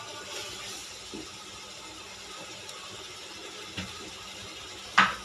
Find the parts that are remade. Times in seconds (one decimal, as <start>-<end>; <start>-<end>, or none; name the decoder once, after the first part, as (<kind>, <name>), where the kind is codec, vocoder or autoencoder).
none